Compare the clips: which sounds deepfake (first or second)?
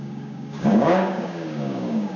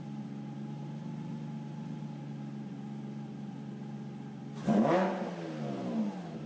first